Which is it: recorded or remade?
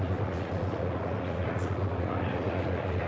remade